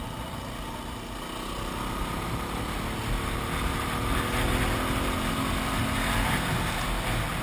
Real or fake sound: real